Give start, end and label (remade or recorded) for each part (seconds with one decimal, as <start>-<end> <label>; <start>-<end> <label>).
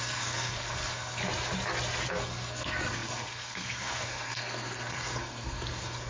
0.0-1.2 remade; 1.2-2.1 recorded; 2.1-6.1 remade